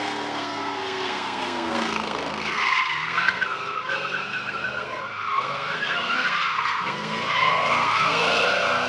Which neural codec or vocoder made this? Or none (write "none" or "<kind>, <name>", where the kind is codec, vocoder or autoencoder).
codec, SNAC